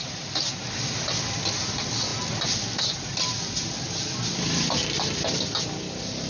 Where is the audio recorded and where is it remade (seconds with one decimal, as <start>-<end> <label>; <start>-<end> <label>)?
0.0-6.3 recorded